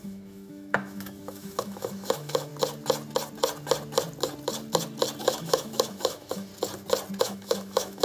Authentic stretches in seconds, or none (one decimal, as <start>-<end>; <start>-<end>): 2.5-5.2; 6.5-7.2